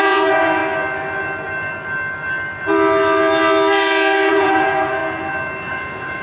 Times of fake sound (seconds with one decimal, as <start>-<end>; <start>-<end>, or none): 0.0-0.6; 4.3-5.0; 5.7-6.2

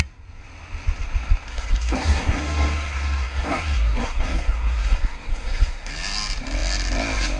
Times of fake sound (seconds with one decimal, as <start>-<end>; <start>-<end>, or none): 1.5-5.9

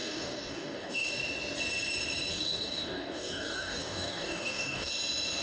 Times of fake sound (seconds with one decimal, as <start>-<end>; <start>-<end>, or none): 0.0-1.1; 2.3-4.9

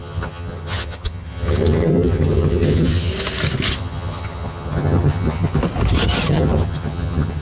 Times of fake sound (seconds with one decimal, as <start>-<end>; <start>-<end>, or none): 0.0-3.1; 3.8-5.6; 6.3-7.4

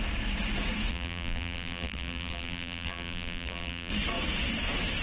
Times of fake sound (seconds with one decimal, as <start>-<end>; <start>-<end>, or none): 0.9-3.9

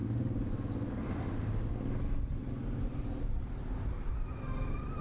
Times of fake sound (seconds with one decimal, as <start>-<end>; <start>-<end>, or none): none

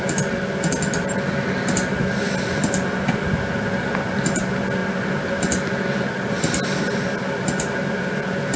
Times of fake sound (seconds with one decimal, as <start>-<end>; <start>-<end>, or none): none

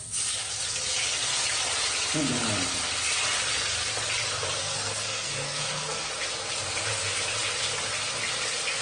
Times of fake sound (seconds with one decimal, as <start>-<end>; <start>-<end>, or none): 4.6-6.1